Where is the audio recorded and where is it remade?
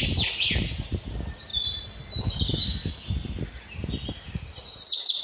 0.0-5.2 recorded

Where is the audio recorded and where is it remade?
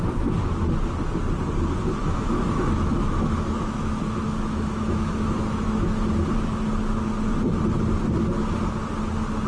0.0-2.0 recorded; 2.0-6.0 remade; 6.0-9.5 recorded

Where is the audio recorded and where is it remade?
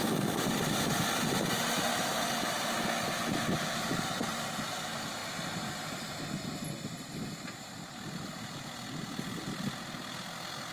0.0-10.7 recorded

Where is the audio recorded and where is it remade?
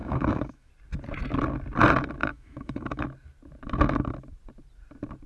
0.0-0.7 remade; 0.7-2.2 recorded; 2.2-3.0 remade; 3.0-5.3 recorded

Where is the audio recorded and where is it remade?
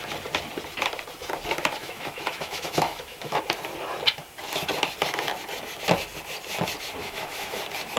0.0-1.8 recorded; 1.8-3.4 remade; 3.4-7.0 recorded; 7.0-7.6 remade; 7.6-8.0 recorded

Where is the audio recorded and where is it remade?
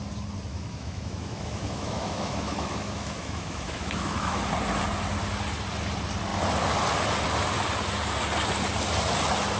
0.0-0.5 recorded; 0.5-4.4 remade; 4.4-9.6 recorded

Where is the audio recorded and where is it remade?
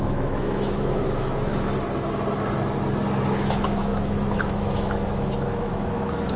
0.0-1.5 remade; 1.5-3.2 recorded; 3.2-6.4 remade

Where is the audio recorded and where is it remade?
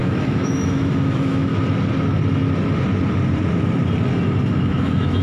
0.0-1.5 remade; 1.5-4.6 recorded; 4.6-5.2 remade